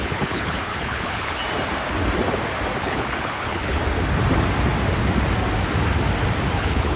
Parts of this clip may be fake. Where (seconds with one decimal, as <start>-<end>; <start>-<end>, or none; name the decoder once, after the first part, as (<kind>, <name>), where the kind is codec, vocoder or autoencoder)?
0.0-1.4 (codec, HILCodec); 2.8-3.8; 6.6-7.0